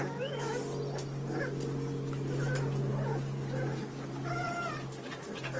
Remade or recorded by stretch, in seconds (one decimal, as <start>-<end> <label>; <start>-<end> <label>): 0.0-2.9 recorded; 2.9-4.5 remade; 4.5-5.6 recorded